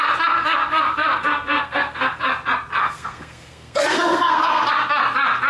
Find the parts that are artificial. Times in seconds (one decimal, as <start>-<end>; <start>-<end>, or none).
0.4-2.2; 2.8-4.7